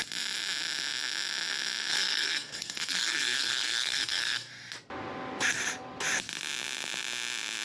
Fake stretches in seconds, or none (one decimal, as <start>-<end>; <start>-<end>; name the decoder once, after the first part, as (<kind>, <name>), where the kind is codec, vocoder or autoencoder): 1.9-4.5 (codec, SNAC)